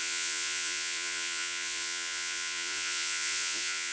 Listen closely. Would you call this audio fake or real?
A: fake